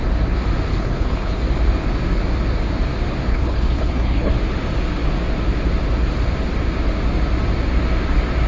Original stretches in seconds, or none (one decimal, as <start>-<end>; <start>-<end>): 0.0-0.7; 1.4-3.3; 4.3-8.5